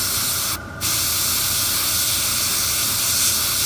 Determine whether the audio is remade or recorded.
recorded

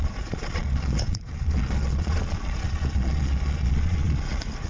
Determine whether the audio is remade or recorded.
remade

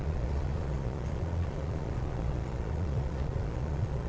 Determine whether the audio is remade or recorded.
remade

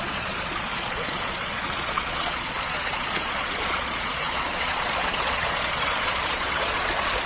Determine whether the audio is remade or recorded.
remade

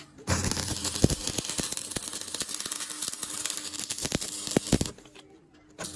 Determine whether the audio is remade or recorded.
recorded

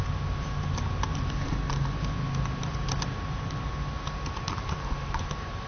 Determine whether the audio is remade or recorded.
recorded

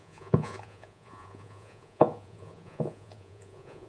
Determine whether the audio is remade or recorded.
remade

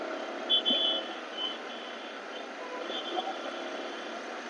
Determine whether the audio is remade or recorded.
recorded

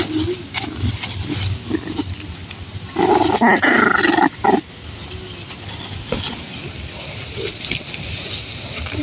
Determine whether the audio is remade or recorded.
recorded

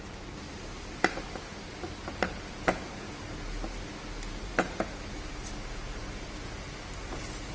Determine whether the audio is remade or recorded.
recorded